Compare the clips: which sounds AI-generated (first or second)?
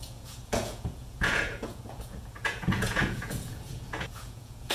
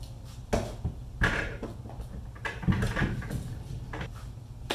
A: first